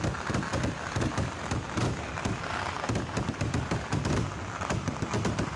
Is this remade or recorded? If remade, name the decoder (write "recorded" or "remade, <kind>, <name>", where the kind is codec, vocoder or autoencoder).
recorded